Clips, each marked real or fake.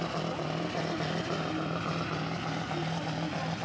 real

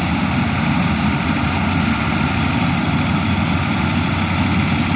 real